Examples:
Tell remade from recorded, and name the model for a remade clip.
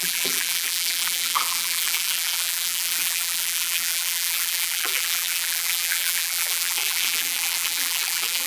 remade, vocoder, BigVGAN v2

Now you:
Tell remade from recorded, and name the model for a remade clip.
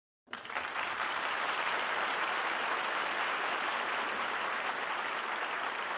remade, vocoder, BigVGAN v2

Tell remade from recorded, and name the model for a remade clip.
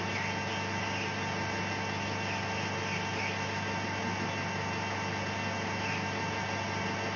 recorded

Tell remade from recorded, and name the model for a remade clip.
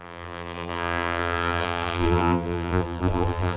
remade, vocoder, BigVGAN v2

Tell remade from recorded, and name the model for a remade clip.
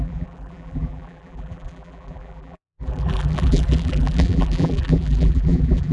remade, vocoder, BigVGAN v2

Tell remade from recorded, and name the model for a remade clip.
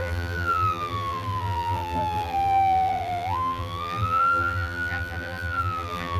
remade, vocoder, BigVGAN v2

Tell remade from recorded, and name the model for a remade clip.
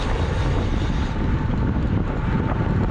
recorded